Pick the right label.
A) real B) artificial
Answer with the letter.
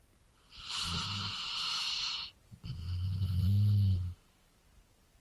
A